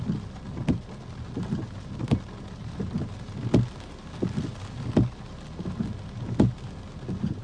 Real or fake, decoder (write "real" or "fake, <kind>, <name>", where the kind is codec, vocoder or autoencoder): real